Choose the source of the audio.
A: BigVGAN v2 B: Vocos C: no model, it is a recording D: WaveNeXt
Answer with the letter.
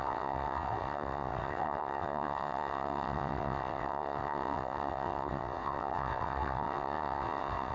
D